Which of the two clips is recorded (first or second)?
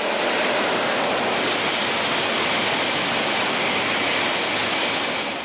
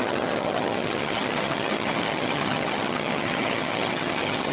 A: first